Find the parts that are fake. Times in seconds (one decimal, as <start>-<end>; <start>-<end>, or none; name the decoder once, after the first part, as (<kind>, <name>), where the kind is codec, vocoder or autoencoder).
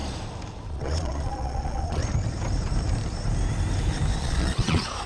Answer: 0.7-2.0 (vocoder, Vocos); 4.2-5.1